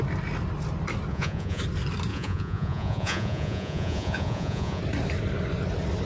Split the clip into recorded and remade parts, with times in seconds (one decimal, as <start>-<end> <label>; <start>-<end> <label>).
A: 0.0-1.1 recorded; 1.1-1.6 remade; 1.6-2.1 recorded; 2.1-4.8 remade; 4.8-6.1 recorded